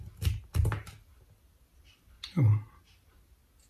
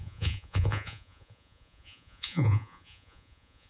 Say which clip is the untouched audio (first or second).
first